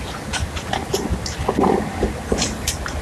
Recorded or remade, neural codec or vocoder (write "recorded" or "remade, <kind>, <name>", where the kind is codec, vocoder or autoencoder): recorded